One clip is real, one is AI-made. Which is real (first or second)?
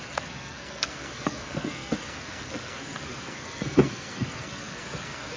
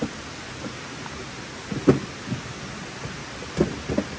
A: second